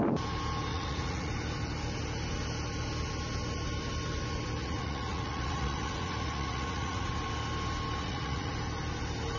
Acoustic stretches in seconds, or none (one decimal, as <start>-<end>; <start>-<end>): 0.0-0.7; 1.3-4.6; 7.1-8.0; 8.5-9.4